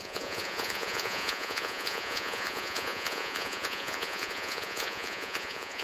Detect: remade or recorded remade